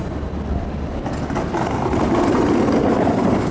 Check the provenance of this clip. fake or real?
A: real